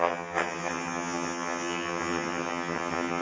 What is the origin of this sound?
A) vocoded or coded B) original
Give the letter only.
A